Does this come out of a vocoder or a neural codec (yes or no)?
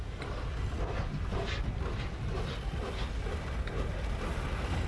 no